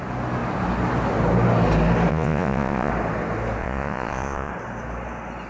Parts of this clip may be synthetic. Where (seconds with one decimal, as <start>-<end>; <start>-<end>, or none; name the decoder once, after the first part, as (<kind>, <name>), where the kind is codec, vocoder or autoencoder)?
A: 2.1-2.9 (vocoder, Vocos); 3.6-4.5